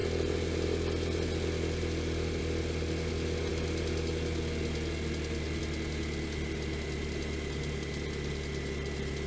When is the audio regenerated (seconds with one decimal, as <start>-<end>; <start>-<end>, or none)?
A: none